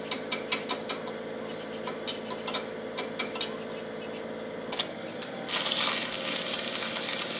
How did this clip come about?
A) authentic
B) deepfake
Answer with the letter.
A